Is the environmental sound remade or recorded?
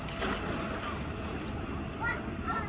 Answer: recorded